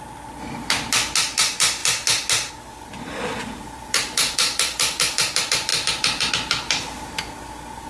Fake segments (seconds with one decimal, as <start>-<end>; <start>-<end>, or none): 3.4-5.3; 5.7-6.3

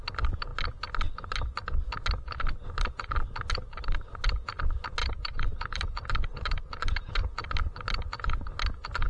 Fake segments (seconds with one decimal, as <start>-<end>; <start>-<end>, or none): 5.0-7.1